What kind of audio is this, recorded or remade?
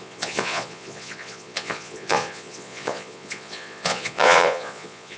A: remade